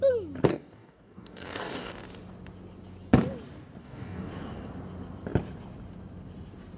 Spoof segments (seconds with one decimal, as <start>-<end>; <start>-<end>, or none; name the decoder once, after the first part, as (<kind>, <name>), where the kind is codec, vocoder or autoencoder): 0.5-1.9 (codec, DAC); 3.8-4.3